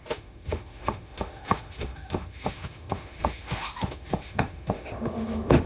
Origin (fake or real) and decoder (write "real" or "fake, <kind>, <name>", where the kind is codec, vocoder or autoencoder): fake, autoencoder, DAC-VAE